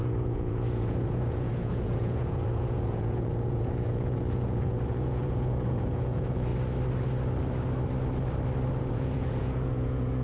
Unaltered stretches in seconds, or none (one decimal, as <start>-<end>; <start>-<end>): 6.5-8.8